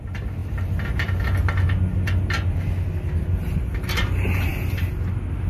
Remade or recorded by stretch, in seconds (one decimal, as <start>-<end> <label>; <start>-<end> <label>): 0.0-5.5 recorded